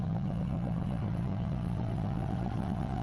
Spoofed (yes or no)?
yes